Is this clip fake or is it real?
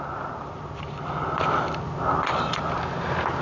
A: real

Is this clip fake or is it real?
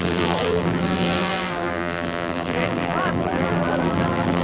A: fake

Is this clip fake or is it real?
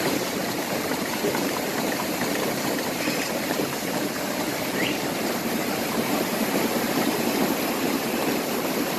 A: fake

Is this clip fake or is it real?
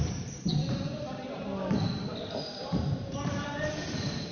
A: fake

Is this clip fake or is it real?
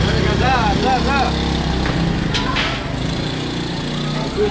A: real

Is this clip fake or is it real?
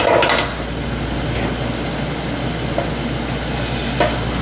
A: real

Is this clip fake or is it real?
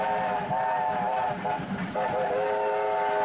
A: real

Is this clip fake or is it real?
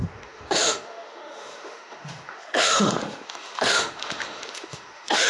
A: fake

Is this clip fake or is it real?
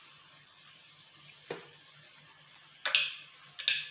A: real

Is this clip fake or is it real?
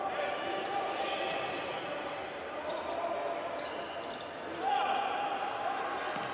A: real